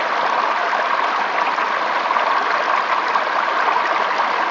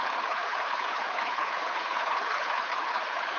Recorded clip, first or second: first